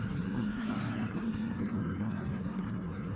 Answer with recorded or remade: remade